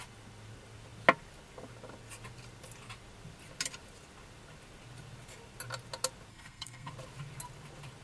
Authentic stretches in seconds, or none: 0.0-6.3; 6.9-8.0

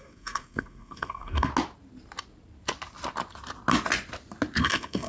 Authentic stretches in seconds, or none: 1.5-4.6

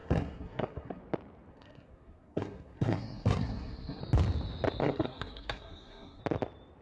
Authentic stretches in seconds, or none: 1.0-1.5; 4.0-4.8; 6.2-6.8

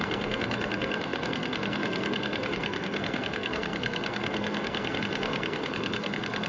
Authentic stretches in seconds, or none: none

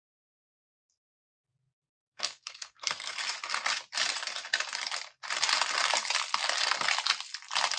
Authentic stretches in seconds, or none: 0.0-1.8; 3.1-7.8

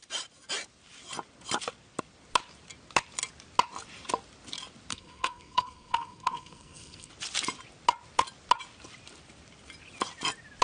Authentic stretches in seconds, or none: 0.0-4.9; 7.1-10.6